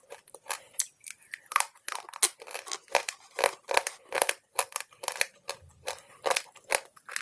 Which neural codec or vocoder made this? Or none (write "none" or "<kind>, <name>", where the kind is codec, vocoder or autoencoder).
none